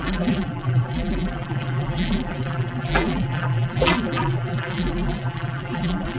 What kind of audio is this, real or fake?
fake